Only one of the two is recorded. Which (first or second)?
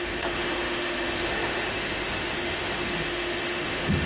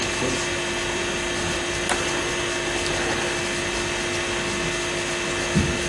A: second